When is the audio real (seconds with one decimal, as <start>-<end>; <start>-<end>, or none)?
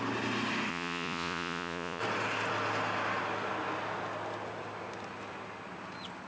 0.0-0.7; 2.0-6.3